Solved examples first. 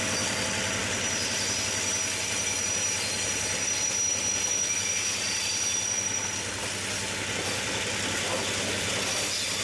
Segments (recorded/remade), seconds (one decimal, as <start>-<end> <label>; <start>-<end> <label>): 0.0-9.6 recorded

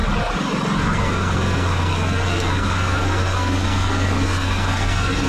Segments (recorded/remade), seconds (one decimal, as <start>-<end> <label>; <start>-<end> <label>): 0.0-0.8 recorded; 0.8-5.3 remade

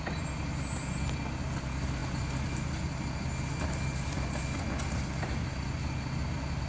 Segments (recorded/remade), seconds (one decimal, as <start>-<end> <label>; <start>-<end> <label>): 0.0-6.7 recorded

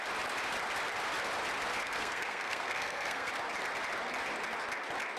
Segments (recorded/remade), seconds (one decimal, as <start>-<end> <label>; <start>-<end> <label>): 0.0-1.7 recorded; 1.7-3.3 remade; 3.3-5.2 recorded